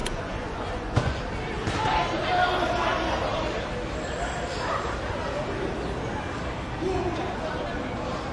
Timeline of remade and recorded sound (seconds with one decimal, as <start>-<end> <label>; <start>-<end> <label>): 0.0-1.2 remade; 1.2-8.3 recorded